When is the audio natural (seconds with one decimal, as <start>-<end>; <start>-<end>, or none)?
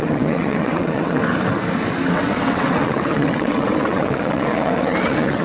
1.2-2.1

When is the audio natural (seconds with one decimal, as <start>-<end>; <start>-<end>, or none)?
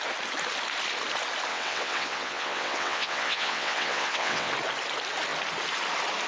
0.0-1.5; 4.5-6.3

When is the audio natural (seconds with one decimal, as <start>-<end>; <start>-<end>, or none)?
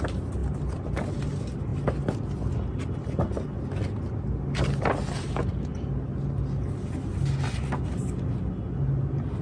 0.0-9.4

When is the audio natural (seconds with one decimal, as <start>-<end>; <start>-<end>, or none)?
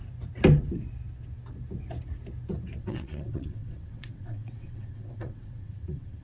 0.0-2.8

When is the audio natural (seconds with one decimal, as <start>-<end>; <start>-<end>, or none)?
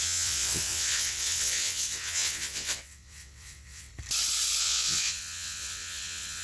3.9-4.6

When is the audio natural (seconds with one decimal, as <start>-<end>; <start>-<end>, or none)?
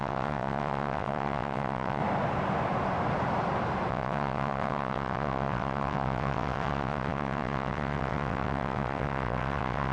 2.0-3.9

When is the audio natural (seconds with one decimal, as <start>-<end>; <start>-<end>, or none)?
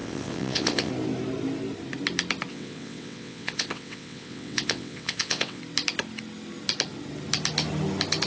0.9-2.5; 5.6-8.3